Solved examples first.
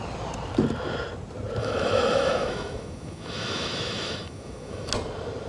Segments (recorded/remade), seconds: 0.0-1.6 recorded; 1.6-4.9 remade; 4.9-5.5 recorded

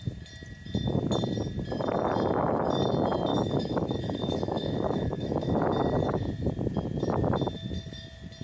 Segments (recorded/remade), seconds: 0.0-3.3 recorded; 3.3-5.5 remade; 5.5-8.4 recorded